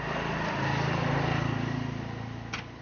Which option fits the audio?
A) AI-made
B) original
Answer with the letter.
B